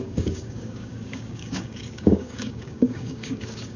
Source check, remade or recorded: remade